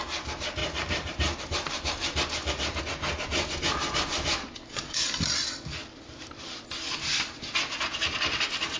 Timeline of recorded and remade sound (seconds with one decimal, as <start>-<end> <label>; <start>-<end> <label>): 0.0-0.6 recorded; 0.6-2.8 remade; 2.8-5.8 recorded; 5.8-6.7 remade; 6.7-8.8 recorded